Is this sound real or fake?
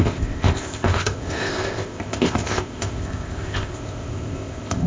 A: fake